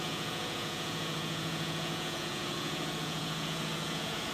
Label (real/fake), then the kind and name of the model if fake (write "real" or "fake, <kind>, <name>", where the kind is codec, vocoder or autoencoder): fake, vocoder, Vocos